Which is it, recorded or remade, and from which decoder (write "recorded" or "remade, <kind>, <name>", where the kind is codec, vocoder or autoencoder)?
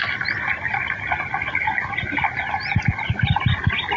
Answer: recorded